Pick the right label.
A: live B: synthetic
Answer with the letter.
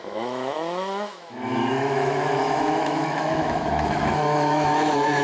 B